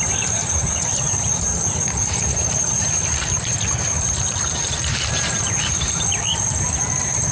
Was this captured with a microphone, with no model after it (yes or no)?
no